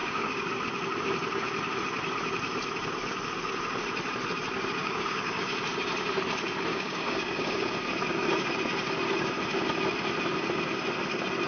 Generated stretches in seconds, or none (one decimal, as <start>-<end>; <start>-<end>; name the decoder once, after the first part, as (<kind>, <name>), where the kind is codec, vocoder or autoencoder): 0.0-0.5 (codec, DAC); 4.8-5.5; 6.7-7.7